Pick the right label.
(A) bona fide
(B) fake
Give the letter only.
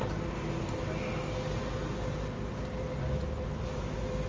A